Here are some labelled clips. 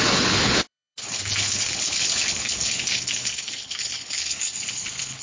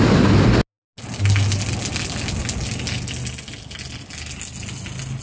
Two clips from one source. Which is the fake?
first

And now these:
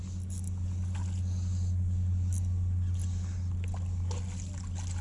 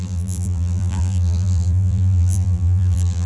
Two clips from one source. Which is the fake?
second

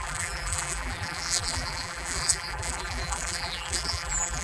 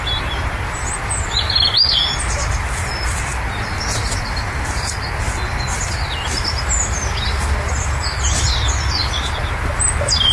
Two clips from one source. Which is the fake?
first